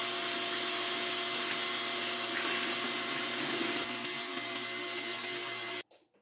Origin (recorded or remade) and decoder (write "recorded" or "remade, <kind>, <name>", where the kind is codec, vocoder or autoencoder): recorded